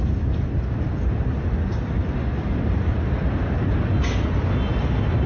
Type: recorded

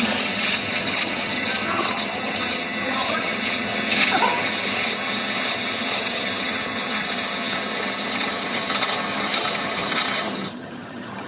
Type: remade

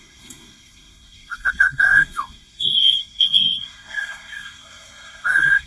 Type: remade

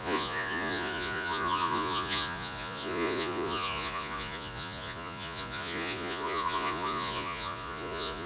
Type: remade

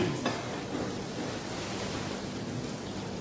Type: recorded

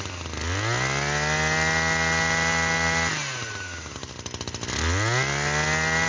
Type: recorded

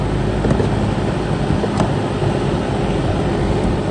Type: recorded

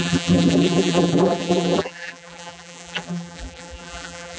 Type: remade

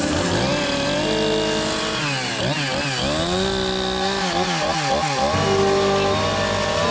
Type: recorded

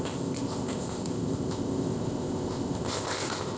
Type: remade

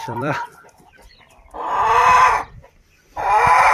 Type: remade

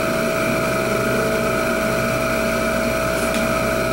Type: recorded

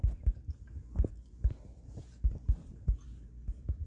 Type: recorded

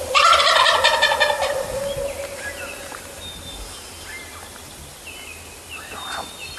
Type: recorded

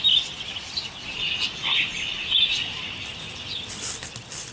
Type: recorded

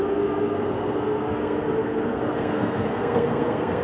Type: remade